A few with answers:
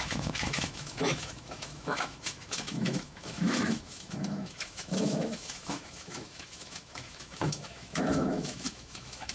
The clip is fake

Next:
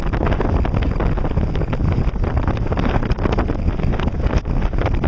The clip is real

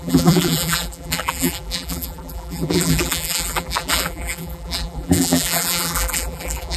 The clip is fake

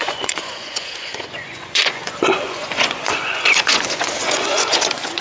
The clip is fake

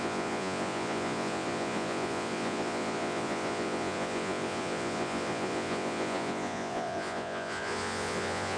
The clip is fake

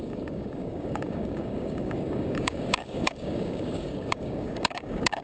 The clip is fake